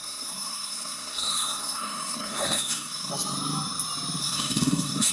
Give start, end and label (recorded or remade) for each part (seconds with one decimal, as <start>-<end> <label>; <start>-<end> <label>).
0.0-3.1 remade; 3.1-4.2 recorded; 4.2-5.1 remade